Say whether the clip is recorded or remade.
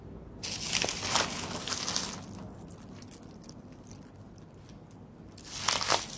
recorded